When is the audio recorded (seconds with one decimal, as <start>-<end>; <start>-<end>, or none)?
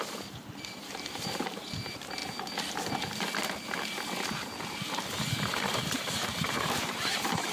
2.2-4.6